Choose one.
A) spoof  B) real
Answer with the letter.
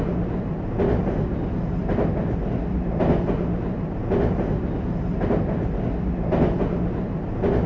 B